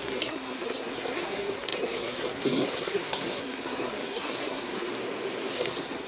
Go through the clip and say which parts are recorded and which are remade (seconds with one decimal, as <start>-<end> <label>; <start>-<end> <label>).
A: 0.0-4.9 remade; 4.9-5.5 recorded; 5.5-6.1 remade